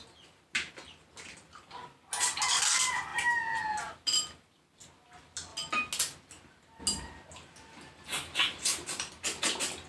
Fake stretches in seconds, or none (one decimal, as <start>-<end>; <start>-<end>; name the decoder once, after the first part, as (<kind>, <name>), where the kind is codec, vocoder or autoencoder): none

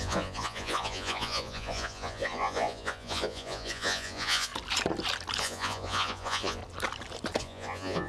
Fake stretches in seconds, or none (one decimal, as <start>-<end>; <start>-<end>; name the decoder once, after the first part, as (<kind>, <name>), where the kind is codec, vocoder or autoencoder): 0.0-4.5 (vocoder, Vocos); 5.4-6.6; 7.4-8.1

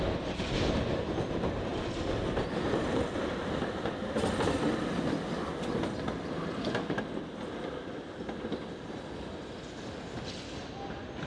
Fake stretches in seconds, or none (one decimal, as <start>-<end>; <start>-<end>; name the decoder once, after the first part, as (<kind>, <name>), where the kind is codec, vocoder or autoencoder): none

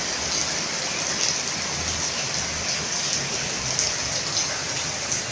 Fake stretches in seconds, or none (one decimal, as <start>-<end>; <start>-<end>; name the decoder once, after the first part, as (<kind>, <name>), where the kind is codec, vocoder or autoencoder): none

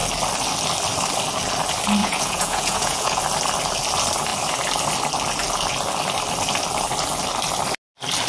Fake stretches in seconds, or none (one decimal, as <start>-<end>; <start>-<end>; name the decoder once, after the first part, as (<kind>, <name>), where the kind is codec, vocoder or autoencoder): 2.0-3.2 (vocoder, Vocos)

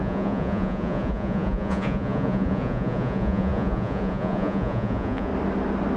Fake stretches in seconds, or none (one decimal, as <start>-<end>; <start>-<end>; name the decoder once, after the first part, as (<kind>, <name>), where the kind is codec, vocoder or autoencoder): 0.0-5.3 (vocoder, Vocos)

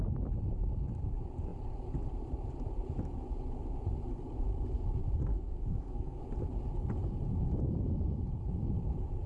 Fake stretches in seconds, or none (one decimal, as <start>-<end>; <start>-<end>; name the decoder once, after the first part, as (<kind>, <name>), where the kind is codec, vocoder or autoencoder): 5.3-6.2 (codec, SNAC)

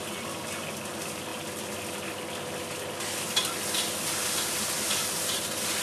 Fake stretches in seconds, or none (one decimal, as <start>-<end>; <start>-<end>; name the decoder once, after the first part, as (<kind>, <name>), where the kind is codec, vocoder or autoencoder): none